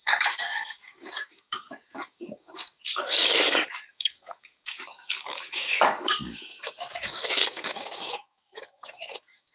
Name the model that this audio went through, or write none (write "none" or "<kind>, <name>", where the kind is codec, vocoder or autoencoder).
codec, DAC